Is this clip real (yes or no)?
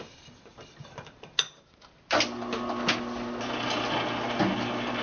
yes